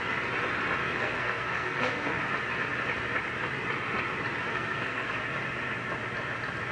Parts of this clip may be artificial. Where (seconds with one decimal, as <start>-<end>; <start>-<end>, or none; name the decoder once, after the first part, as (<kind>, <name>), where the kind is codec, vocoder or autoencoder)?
0.8-2.2 (codec, SNAC); 4.5-5.2